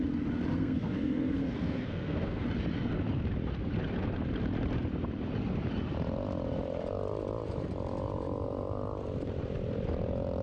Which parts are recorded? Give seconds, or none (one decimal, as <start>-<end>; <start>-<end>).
0.0-0.5; 2.4-10.4